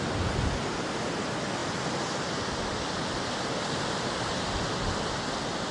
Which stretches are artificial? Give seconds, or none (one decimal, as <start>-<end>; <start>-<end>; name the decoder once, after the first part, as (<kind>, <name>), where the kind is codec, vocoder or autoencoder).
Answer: none